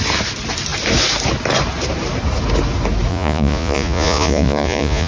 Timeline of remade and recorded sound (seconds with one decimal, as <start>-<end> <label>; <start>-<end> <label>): 0.0-3.1 recorded; 3.1-5.1 remade

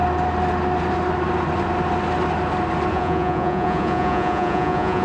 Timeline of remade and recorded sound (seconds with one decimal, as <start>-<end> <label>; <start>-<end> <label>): 0.0-2.9 recorded; 2.9-5.0 remade